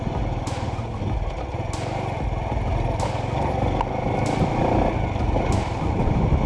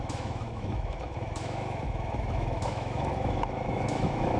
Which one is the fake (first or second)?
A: second